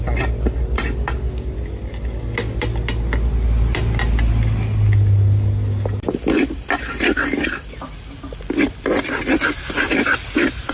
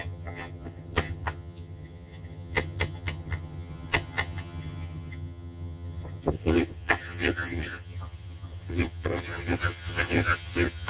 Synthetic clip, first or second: second